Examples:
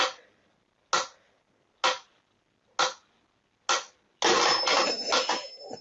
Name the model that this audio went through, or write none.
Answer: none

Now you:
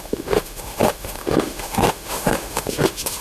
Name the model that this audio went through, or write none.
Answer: autoencoder, DAC-VAE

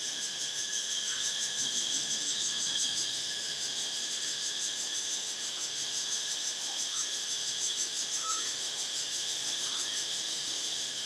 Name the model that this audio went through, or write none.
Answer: autoencoder, DAC-VAE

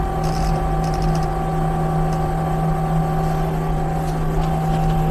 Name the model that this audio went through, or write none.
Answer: none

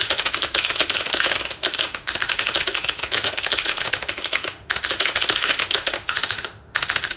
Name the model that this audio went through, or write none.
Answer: autoencoder, DAC-VAE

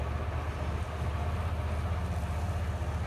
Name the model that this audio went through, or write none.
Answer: none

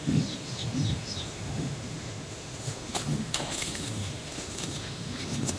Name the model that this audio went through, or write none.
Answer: autoencoder, DAC-VAE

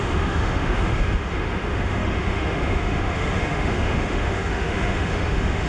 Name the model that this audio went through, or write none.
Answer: autoencoder, DAC-VAE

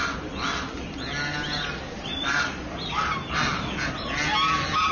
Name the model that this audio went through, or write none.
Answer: none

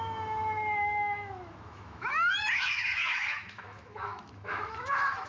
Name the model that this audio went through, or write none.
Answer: autoencoder, DAC-VAE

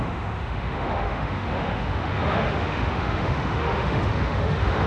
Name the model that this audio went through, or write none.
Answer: autoencoder, DAC-VAE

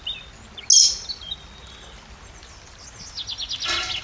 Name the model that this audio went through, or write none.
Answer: none